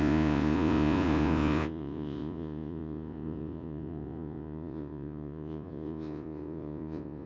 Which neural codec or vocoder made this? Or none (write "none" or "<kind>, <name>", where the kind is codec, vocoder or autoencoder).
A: vocoder, Vocos